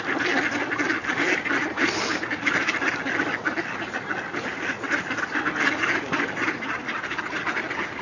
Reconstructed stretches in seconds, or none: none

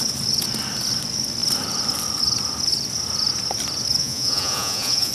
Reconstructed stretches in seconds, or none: 4.0-5.1

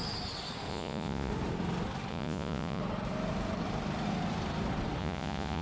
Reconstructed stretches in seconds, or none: 0.7-1.3; 2.1-2.8; 5.0-5.6

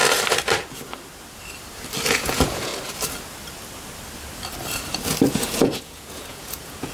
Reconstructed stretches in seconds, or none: 2.1-2.7; 5.3-6.9